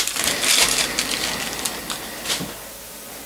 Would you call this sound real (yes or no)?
yes